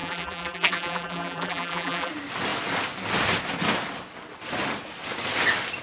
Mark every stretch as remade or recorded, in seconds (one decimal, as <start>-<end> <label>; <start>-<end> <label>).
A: 0.0-2.1 remade; 2.1-5.8 recorded